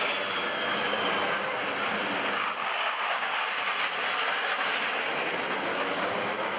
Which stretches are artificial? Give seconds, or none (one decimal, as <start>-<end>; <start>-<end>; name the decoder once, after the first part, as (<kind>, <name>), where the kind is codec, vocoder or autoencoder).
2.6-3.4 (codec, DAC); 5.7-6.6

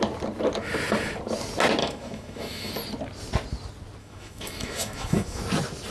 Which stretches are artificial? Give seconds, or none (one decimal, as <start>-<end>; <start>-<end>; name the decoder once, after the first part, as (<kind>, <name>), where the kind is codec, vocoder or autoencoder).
1.8-2.7 (autoencoder, DAC-VAE); 4.0-5.4

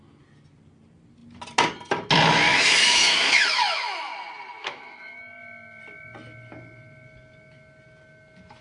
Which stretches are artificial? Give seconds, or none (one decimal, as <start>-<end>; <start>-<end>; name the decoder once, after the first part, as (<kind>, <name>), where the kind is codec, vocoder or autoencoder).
2.5-4.1 (autoencoder, DAC-VAE); 4.6-5.2